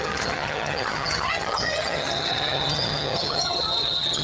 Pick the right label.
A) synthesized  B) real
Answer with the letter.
A